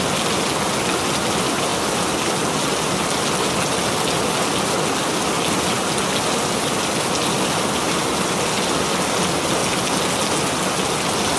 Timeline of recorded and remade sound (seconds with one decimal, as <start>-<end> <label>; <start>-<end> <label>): 0.0-11.4 recorded

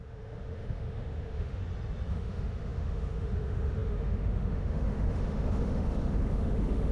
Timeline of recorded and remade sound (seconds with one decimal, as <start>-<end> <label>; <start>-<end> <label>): 0.0-1.6 remade; 1.6-2.1 recorded; 2.1-6.9 remade

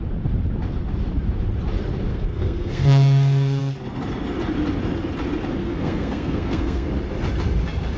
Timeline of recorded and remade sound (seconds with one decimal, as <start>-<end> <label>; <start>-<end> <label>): 0.0-2.1 recorded; 2.1-3.6 remade; 3.6-5.6 recorded; 5.6-6.9 remade; 6.9-8.0 recorded

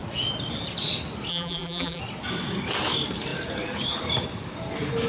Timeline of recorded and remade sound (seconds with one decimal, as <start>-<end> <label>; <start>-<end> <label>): 0.0-1.3 recorded; 1.3-2.0 remade; 2.0-5.1 recorded

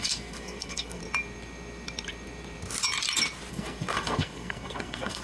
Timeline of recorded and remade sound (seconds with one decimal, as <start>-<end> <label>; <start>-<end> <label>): 0.0-1.0 remade; 1.0-3.5 recorded; 3.5-5.2 remade

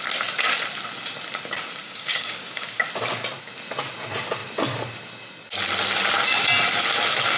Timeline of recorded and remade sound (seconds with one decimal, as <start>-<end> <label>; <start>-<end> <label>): 0.0-1.8 recorded; 1.8-2.8 remade; 2.8-7.4 recorded